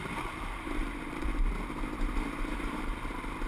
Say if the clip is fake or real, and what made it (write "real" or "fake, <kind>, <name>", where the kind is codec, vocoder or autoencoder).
fake, vocoder, BigVGAN v2